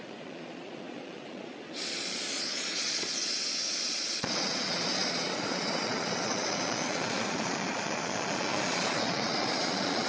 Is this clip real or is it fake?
fake